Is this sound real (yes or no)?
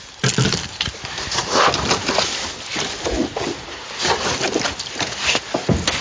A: yes